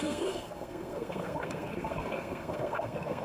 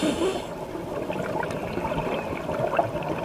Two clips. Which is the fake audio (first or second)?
first